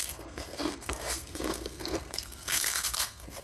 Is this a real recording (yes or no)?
no